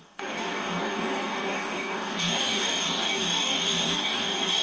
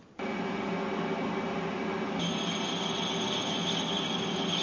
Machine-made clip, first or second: first